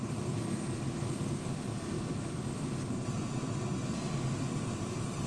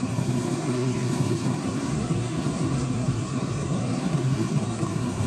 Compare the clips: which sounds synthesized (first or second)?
second